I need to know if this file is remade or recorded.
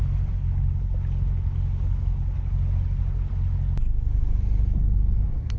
recorded